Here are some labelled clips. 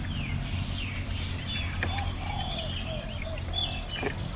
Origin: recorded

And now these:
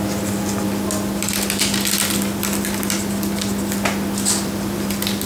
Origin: recorded